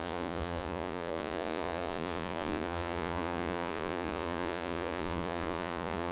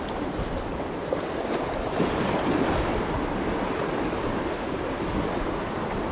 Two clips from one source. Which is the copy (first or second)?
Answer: first